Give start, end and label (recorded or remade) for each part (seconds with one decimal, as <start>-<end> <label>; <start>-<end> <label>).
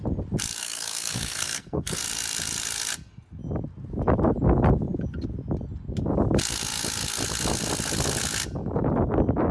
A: 0.0-0.6 recorded; 0.6-2.0 remade; 2.0-9.5 recorded